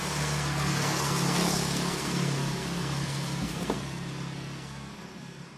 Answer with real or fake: fake